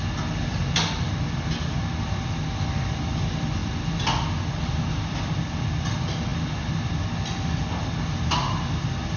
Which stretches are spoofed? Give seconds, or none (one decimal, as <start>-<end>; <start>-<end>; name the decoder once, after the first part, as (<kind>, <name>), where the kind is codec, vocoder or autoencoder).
none